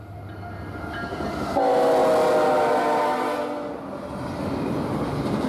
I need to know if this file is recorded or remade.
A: recorded